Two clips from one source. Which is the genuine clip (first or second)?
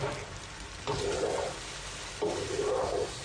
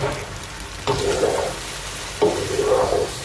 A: second